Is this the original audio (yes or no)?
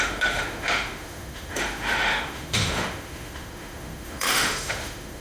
no